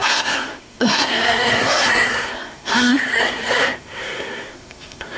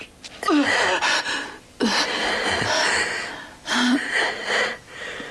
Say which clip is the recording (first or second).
second